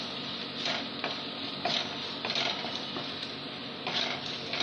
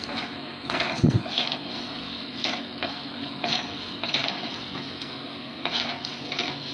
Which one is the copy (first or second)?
second